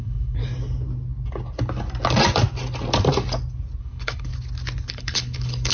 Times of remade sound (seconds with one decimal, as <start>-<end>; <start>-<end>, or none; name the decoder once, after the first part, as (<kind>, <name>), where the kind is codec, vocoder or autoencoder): 0.0-0.4 (codec, HILCodec); 3.8-4.3; 4.9-5.7